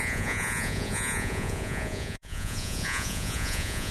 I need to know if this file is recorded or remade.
remade